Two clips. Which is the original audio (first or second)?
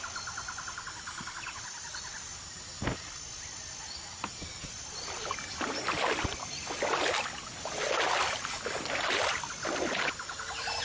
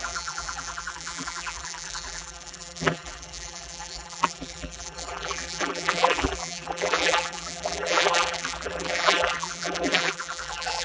first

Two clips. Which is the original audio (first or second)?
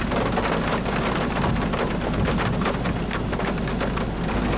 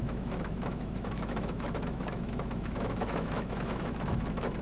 first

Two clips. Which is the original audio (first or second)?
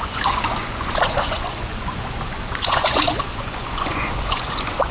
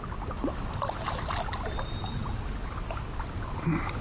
second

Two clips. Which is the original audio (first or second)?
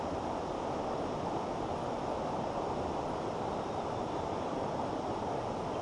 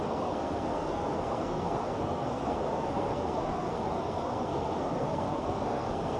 first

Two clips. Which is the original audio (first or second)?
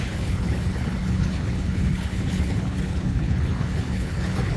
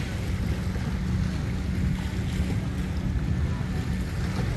second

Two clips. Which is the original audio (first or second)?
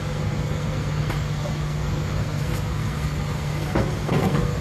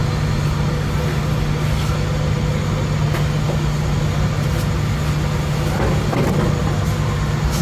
second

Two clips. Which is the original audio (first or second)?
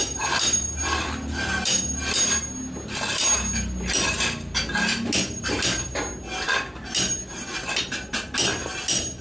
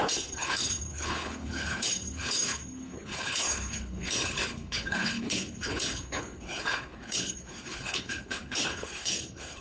first